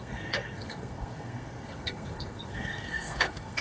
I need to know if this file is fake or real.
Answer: fake